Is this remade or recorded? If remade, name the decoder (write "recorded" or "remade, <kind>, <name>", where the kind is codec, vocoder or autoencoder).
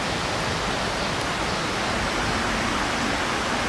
recorded